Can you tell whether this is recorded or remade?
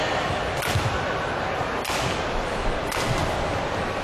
recorded